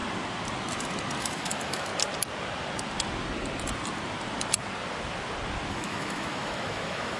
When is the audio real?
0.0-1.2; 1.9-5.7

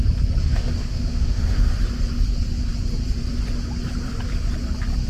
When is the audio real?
0.0-0.5; 1.7-5.1

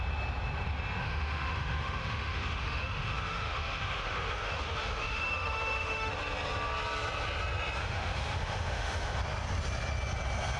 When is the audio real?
0.0-1.0; 6.1-7.8; 9.2-10.6

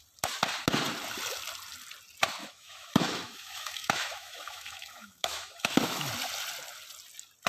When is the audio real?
0.0-2.4; 6.1-7.5

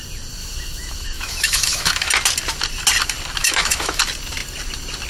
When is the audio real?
0.0-0.4; 2.1-3.4; 4.0-5.1